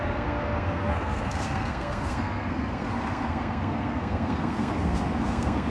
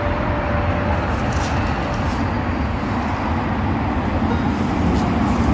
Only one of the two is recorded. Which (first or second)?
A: second